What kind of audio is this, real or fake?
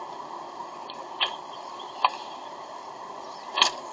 real